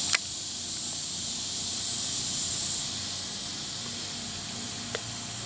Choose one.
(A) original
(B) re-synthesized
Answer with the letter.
A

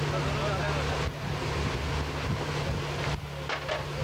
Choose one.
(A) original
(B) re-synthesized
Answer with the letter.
A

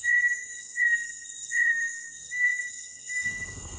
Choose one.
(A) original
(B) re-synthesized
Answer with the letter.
B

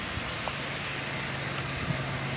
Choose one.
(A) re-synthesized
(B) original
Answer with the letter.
B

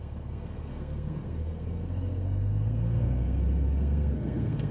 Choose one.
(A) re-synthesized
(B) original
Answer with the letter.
A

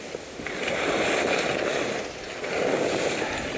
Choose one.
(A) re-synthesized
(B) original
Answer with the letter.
B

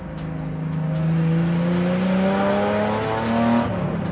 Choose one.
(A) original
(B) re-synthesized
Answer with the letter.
A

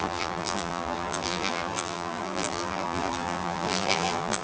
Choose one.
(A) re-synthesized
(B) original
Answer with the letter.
A